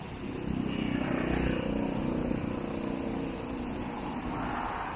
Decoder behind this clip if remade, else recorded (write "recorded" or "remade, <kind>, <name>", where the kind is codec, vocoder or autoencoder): recorded